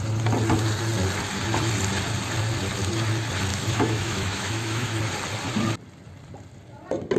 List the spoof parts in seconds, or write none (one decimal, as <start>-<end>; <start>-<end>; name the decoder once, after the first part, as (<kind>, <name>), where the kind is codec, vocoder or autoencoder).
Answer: 3.5-5.0 (autoencoder, DAC-VAE)